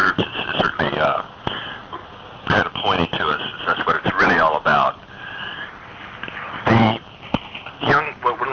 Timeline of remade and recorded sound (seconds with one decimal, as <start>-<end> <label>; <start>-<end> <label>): 0.0-0.6 remade; 0.6-3.5 recorded; 3.5-7.6 remade; 7.6-8.5 recorded